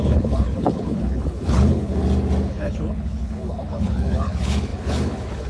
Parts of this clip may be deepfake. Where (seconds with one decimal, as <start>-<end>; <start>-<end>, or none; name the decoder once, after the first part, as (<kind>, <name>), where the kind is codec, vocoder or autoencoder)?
0.0-2.0 (codec, HILCodec); 2.5-5.5